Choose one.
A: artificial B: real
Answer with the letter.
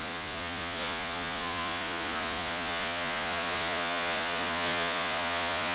A